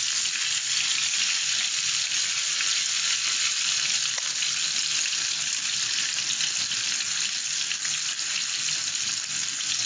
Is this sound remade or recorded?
recorded